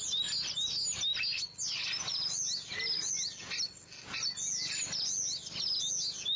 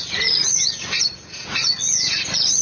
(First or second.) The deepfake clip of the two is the second